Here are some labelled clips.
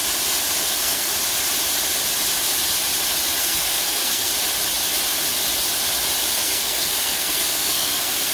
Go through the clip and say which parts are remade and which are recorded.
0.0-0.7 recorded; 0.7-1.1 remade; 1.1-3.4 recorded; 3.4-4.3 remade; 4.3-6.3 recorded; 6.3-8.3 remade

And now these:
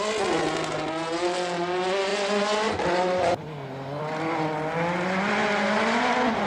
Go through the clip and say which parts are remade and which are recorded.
0.0-6.5 recorded

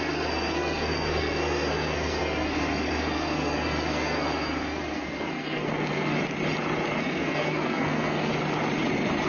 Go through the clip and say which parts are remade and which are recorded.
0.0-6.1 remade; 6.1-7.0 recorded; 7.0-8.3 remade; 8.3-9.3 recorded